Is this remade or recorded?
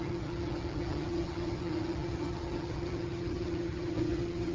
remade